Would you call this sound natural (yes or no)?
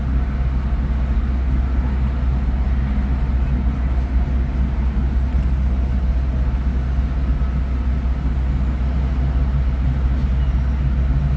yes